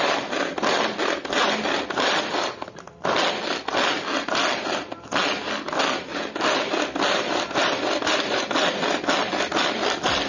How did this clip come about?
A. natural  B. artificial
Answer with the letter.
B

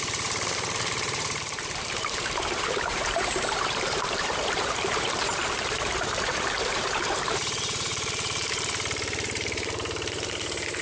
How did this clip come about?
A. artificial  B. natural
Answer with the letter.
A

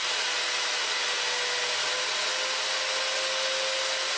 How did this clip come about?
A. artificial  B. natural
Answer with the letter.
B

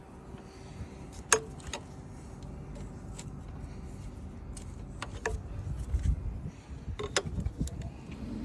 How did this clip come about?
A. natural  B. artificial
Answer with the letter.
A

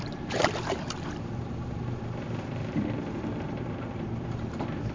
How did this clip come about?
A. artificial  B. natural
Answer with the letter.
A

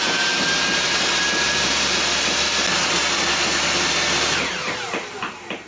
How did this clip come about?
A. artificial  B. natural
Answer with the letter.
B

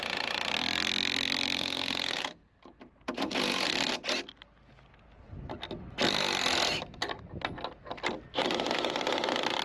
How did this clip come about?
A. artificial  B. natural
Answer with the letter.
B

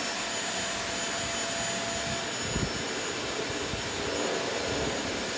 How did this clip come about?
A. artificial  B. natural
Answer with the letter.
B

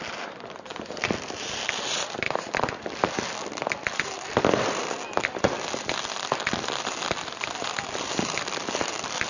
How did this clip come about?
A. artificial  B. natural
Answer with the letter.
A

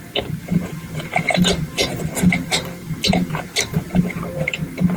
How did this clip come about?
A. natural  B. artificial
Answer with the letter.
B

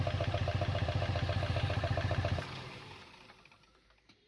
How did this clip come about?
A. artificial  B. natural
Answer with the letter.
A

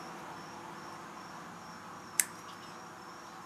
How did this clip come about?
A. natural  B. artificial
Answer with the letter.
A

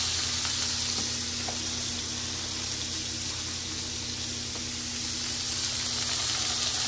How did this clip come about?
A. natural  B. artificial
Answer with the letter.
A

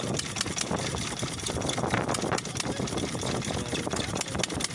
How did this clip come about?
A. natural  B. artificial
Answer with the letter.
A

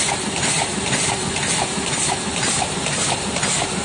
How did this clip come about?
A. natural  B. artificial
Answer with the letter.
B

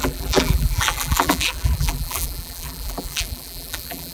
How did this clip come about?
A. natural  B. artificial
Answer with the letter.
B